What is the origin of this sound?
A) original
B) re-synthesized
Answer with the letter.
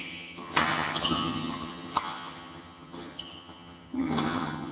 B